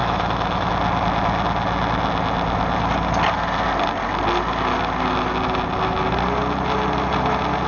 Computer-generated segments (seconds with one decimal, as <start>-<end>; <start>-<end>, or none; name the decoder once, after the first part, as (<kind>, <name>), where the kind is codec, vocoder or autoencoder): 0.0-0.7 (autoencoder, DAC-VAE)